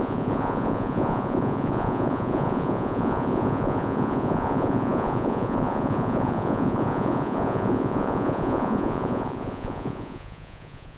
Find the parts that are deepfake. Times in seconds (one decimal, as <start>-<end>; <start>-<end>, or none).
0.0-11.0